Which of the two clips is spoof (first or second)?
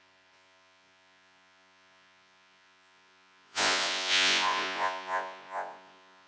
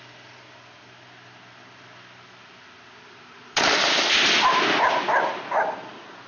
first